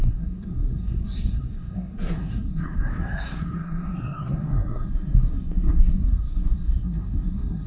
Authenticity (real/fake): fake